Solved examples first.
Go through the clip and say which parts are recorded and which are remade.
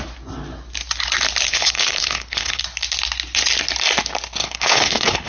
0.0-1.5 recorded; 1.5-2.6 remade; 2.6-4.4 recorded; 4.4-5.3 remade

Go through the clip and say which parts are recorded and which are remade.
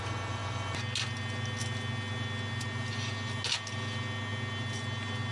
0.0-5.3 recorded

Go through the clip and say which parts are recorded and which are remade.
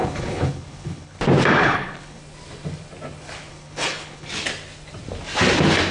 0.0-1.2 remade; 1.2-1.6 recorded; 1.6-2.2 remade; 2.2-3.5 recorded; 3.5-4.3 remade; 4.3-5.9 recorded